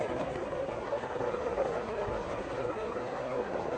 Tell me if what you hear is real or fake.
fake